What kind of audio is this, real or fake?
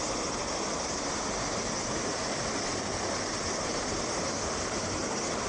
real